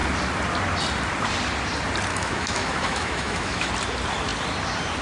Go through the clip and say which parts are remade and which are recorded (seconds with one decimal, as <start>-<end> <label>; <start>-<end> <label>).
0.0-2.1 recorded; 2.1-3.7 remade; 3.7-5.0 recorded